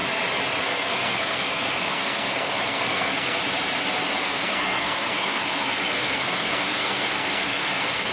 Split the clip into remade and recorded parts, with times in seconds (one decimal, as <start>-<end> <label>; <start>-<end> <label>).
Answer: 0.0-0.6 recorded; 0.6-3.4 remade; 3.4-4.2 recorded; 4.2-8.1 remade